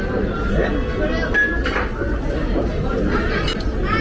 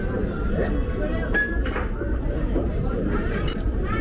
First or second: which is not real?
second